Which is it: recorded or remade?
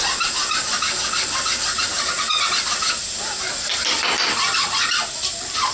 recorded